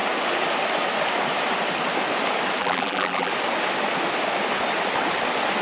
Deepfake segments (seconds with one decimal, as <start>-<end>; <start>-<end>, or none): 2.6-3.3